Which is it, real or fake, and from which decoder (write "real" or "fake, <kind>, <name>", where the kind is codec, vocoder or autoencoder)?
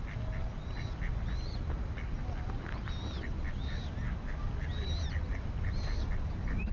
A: real